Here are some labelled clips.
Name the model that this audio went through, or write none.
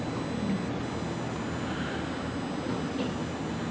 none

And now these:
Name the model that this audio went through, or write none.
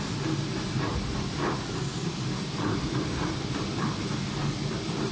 none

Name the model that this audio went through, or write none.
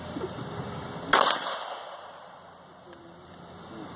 none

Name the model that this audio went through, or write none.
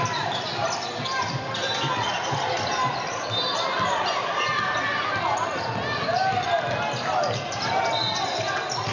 none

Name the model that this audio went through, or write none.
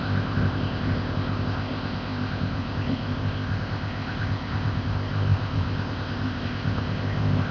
codec, ZipCodec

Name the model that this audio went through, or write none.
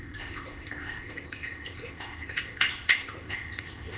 codec, ZipCodec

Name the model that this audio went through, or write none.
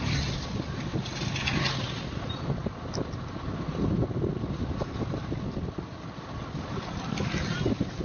none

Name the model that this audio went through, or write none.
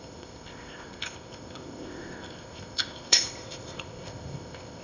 codec, ZipCodec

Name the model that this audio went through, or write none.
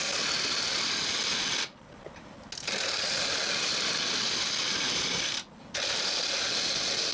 none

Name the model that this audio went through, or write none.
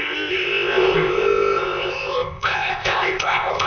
codec, ZipCodec